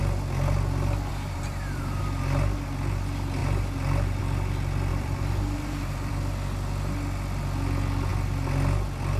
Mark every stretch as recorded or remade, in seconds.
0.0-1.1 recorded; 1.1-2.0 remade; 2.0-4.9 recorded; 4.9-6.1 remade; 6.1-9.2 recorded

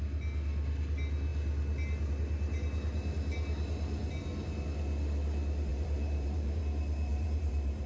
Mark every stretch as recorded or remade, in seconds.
0.0-5.7 recorded; 5.7-6.6 remade; 6.6-7.1 recorded; 7.1-7.9 remade

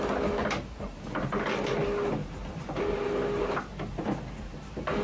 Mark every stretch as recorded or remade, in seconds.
0.0-2.2 recorded; 2.2-2.8 remade; 2.8-5.0 recorded

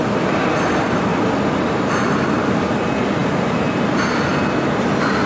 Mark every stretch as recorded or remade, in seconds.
0.0-1.1 recorded; 1.1-2.6 remade; 2.6-5.3 recorded

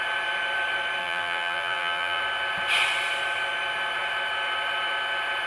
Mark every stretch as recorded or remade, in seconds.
0.0-1.0 recorded; 1.0-2.2 remade; 2.2-5.5 recorded

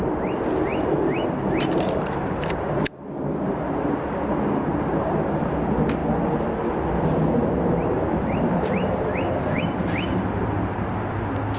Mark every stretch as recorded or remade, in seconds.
0.0-0.7 recorded; 0.7-2.6 remade; 2.6-4.7 recorded; 4.7-5.5 remade; 5.5-11.6 recorded